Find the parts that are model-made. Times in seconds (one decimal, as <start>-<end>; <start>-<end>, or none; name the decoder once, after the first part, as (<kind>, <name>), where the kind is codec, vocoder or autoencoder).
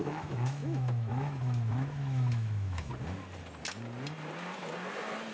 0.0-2.9 (autoencoder, DAC-VAE)